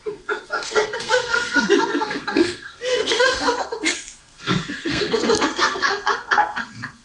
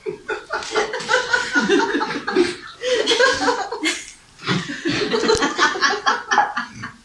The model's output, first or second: first